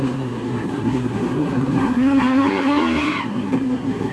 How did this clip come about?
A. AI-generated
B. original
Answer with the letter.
A